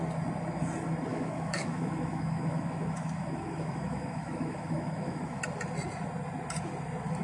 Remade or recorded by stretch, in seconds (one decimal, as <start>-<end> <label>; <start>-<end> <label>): 0.0-1.1 recorded; 1.1-5.4 remade; 5.4-7.2 recorded